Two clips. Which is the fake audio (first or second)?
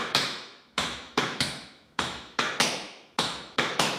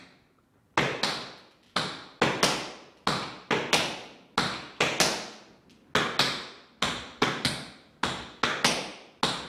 first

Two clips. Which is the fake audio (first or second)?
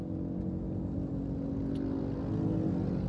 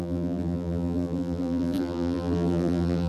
second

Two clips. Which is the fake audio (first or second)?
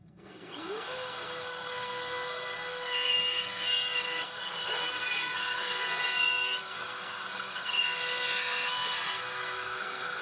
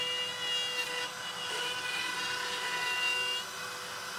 first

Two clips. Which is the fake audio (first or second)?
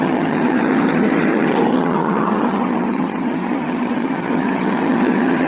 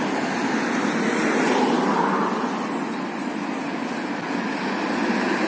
first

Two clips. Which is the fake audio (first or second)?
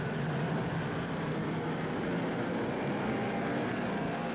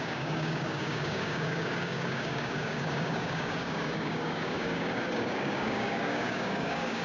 second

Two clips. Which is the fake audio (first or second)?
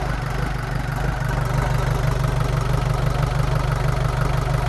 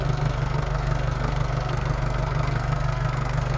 second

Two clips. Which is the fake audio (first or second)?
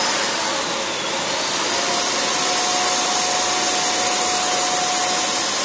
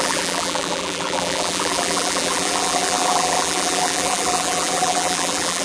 second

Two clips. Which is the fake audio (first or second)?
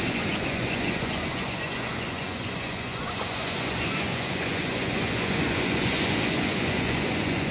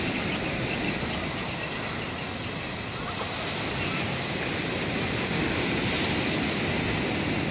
first